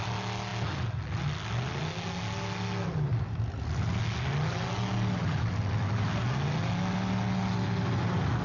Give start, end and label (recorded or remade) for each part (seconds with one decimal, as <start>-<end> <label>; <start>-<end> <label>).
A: 0.0-8.4 recorded